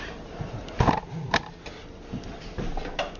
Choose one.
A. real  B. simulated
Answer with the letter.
A